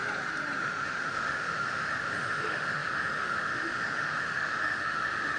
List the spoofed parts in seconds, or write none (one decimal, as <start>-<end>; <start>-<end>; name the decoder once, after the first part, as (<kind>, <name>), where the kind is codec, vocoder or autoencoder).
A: 0.6-5.4 (autoencoder, DAC-VAE)